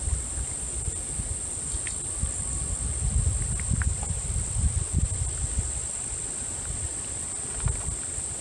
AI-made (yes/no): no